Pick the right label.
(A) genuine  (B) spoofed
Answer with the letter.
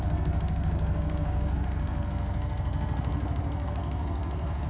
B